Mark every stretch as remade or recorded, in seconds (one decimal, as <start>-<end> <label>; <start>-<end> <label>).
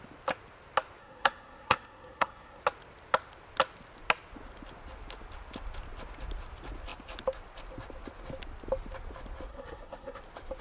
0.0-1.0 recorded; 1.0-2.6 remade; 2.6-9.5 recorded; 9.5-10.2 remade; 10.2-10.6 recorded